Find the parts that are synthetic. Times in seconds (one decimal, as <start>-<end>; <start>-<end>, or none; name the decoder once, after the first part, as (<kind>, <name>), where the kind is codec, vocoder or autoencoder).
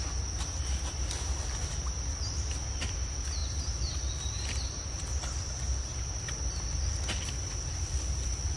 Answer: none